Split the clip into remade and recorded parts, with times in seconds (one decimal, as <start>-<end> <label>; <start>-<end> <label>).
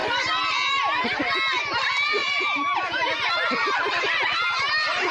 0.0-2.2 recorded; 2.2-3.3 remade; 3.3-5.1 recorded